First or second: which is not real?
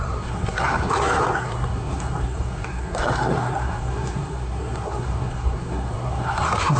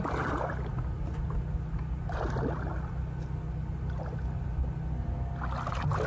first